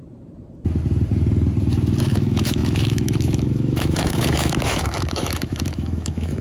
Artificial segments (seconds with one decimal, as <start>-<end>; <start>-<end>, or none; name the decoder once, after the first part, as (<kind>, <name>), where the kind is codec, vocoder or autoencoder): 2.0-6.4 (autoencoder, DAC-VAE)